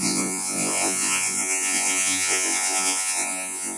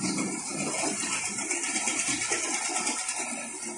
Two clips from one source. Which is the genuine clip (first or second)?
second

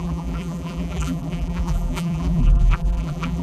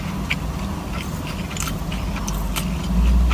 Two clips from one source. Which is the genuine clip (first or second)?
second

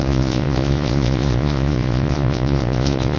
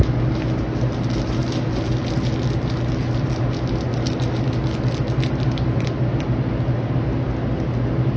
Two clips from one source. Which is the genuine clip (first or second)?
second